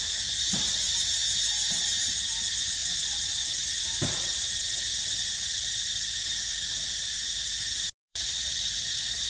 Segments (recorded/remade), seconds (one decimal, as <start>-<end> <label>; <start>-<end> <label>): 0.0-2.8 recorded; 2.8-3.8 remade; 3.8-8.1 recorded; 8.1-8.6 remade; 8.6-9.3 recorded